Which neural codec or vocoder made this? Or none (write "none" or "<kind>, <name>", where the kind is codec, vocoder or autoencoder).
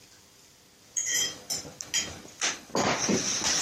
none